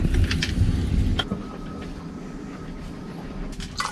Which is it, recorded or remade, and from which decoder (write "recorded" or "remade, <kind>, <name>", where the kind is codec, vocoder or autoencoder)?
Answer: recorded